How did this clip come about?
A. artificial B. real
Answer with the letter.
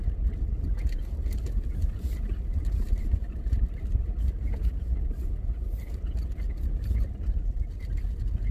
B